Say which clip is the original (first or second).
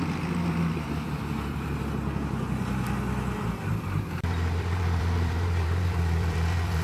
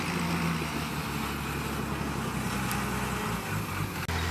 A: second